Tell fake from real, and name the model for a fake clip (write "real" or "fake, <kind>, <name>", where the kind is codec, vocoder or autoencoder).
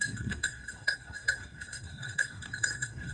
fake, codec, SNAC